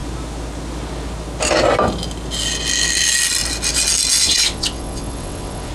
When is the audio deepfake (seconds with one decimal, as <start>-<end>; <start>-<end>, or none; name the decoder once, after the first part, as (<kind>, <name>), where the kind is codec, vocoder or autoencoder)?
4.1-5.7 (vocoder, WaveNeXt)